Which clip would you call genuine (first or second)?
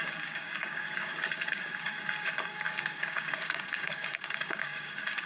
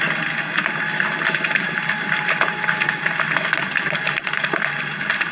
second